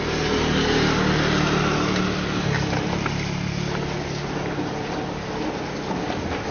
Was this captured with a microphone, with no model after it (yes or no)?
yes